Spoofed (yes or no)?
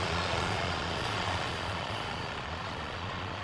yes